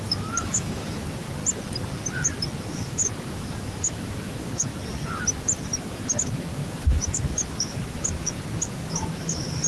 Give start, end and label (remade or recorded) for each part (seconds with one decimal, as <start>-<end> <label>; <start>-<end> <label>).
0.0-1.4 remade; 1.4-2.6 recorded; 2.6-4.7 remade; 4.7-5.8 recorded; 5.8-9.7 remade

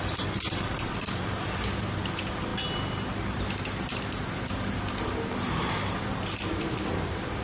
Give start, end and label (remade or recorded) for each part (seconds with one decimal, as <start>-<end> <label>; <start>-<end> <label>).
0.0-2.5 remade; 2.5-6.9 recorded; 6.9-7.4 remade

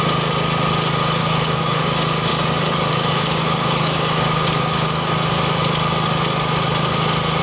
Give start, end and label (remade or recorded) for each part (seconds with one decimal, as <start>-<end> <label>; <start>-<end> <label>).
0.0-1.2 recorded; 1.2-1.8 remade; 1.8-2.3 recorded; 2.3-5.3 remade; 5.3-7.4 recorded

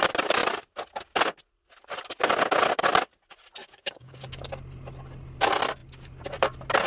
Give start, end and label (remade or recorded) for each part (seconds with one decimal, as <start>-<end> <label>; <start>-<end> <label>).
0.0-3.6 recorded; 3.6-4.5 remade; 4.5-6.9 recorded

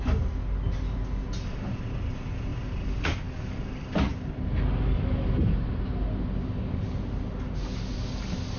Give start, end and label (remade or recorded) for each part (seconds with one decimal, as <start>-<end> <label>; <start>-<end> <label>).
0.0-8.6 recorded

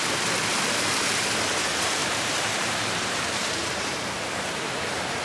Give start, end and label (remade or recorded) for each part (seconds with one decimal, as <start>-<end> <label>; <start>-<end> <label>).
0.0-0.5 recorded; 0.5-1.2 remade; 1.2-2.0 recorded; 2.0-5.2 remade

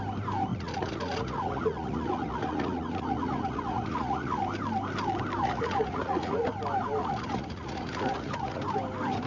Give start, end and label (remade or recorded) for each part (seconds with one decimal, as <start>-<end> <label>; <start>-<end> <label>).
0.0-0.5 recorded; 0.5-4.4 remade; 4.4-5.4 recorded; 5.4-6.5 remade; 6.5-7.0 recorded; 7.0-8.6 remade; 8.6-9.3 recorded